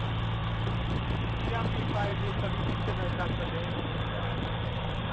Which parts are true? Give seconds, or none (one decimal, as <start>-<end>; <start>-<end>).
0.0-0.4; 1.2-2.1; 2.7-3.9